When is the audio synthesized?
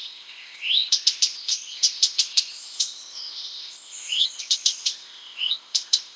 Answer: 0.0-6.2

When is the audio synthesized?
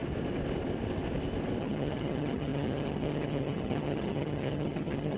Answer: 1.6-5.2